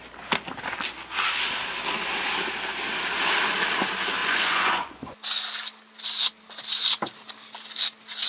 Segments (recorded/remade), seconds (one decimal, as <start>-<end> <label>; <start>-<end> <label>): 0.0-4.2 recorded; 4.2-5.4 remade; 5.4-8.3 recorded